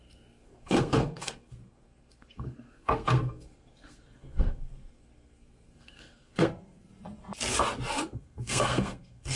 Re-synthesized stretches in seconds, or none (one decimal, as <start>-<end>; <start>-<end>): 0.0-6.9; 7.9-9.4